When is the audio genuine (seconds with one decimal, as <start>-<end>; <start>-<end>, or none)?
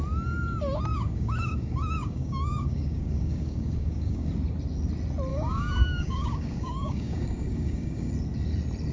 0.0-0.9; 4.3-5.3; 8.1-8.9